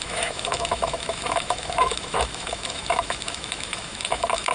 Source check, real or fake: fake